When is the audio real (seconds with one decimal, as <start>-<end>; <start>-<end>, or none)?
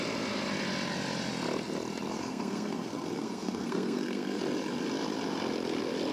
0.0-2.2; 4.4-6.1